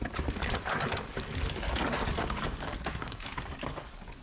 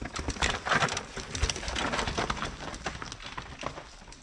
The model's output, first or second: first